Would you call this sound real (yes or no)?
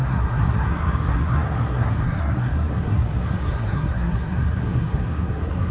no